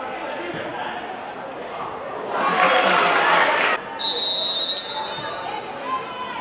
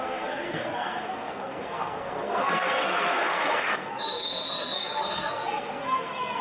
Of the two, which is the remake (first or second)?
second